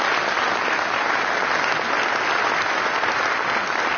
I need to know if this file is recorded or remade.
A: recorded